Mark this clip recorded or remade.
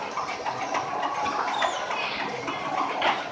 recorded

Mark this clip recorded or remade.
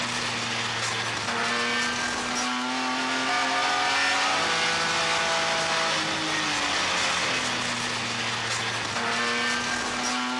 recorded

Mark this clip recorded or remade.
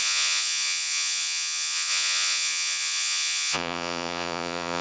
remade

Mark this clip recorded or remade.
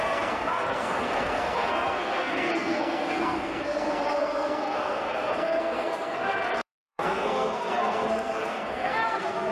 remade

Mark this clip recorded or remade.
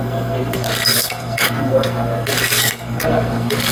remade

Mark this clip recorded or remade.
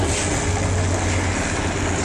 recorded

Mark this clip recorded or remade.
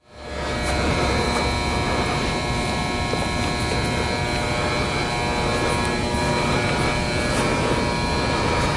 recorded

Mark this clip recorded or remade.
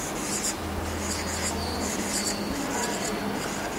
recorded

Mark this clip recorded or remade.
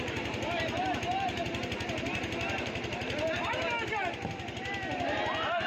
recorded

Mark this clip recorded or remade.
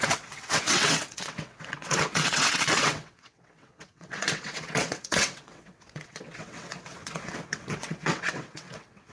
remade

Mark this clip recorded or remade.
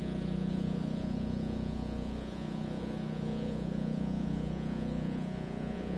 remade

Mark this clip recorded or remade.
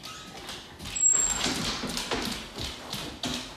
recorded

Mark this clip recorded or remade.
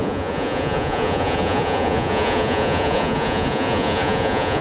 remade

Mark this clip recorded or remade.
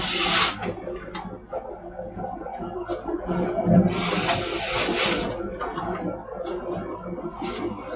recorded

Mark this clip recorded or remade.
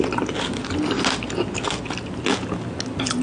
recorded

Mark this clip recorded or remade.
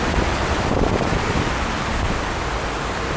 remade